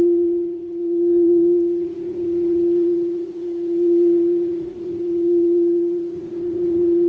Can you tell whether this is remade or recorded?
remade